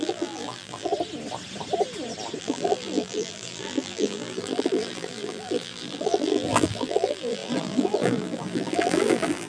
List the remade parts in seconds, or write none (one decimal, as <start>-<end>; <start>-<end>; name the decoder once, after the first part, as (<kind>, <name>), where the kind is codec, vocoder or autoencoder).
0.0-0.9 (vocoder, BigVGAN v2); 2.4-9.5

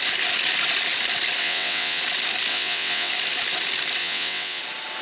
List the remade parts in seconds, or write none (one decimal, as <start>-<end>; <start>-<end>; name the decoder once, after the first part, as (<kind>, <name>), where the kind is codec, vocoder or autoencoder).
1.4-2.0 (vocoder, WaveNeXt); 2.5-3.1; 4.0-4.6

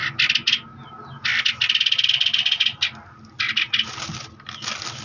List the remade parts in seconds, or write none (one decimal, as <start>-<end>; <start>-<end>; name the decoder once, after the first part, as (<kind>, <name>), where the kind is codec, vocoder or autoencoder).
none

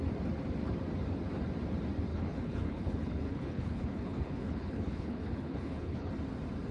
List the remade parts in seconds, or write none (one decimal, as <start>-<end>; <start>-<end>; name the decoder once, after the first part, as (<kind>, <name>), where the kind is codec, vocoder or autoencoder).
2.1-6.1 (codec, HILCodec)

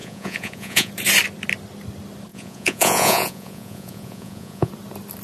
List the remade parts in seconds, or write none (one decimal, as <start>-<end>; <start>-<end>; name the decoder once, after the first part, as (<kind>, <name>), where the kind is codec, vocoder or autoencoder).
0.0-0.9 (vocoder, Vocos); 2.3-4.7

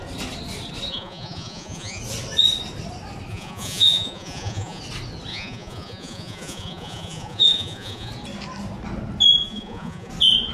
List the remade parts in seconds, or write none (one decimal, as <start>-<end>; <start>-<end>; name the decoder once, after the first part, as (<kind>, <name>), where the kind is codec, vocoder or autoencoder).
0.9-2.0 (vocoder, Vocos); 3.3-4.8; 5.3-8.1; 9.4-10.1

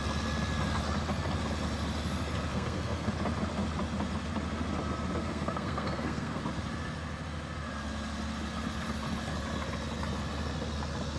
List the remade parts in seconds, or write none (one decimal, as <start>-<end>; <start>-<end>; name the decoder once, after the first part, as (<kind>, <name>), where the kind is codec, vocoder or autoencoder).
2.5-3.1 (codec, SNAC); 5.2-6.4